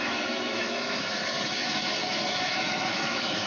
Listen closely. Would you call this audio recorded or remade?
remade